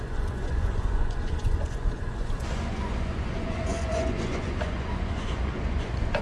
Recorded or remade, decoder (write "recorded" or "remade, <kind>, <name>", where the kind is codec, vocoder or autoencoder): remade, vocoder, Vocos